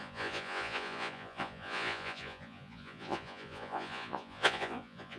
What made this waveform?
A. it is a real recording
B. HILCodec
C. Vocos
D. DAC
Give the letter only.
C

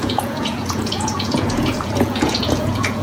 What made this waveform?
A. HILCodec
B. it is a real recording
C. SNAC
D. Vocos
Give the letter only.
D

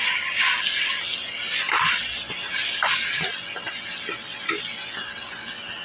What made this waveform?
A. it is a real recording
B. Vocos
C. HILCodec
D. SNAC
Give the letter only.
A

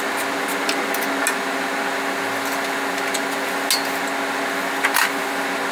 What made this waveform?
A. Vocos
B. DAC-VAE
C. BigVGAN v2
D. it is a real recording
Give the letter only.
D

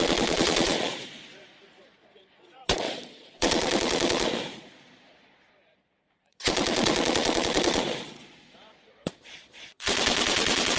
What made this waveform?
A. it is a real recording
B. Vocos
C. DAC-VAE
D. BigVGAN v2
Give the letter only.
B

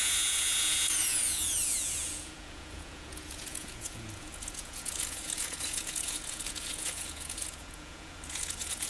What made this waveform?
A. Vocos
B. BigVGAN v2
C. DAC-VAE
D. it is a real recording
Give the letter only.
A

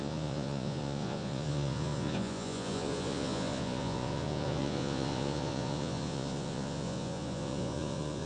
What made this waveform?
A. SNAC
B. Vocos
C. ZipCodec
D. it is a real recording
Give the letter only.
B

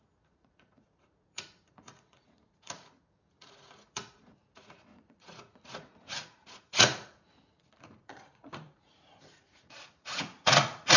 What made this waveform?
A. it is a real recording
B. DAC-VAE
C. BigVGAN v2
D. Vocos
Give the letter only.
D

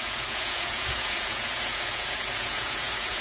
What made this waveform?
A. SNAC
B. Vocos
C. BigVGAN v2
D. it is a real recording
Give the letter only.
B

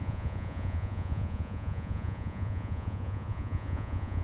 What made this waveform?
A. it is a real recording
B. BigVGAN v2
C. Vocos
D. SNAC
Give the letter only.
C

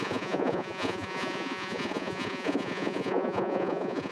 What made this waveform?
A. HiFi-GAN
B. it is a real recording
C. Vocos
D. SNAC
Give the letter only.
C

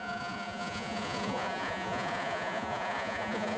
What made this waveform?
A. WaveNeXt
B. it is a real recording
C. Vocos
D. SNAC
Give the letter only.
C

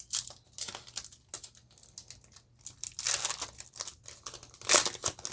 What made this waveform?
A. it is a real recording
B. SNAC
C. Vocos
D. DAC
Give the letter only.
A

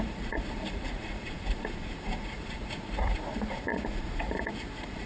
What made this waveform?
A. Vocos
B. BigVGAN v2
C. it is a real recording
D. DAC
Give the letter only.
A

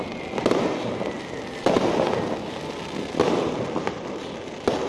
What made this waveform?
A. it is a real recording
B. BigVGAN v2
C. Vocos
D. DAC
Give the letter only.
A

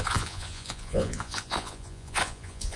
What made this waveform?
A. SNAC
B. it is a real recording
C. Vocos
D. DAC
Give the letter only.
C